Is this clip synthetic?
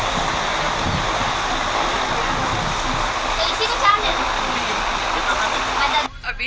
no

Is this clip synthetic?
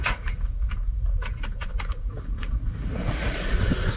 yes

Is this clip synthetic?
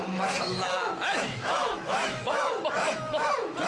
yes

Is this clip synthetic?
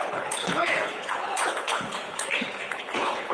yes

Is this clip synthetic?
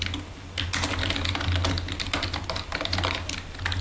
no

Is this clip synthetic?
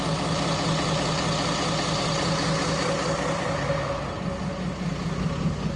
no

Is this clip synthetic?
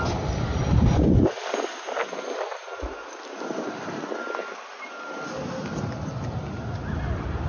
no